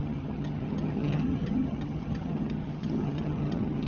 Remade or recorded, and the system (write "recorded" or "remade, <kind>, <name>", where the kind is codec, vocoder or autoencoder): remade, vocoder, HiFi-GAN